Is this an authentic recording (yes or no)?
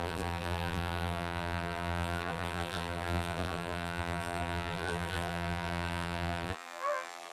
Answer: no